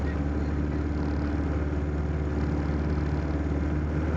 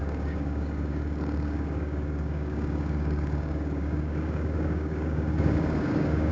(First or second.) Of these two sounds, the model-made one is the second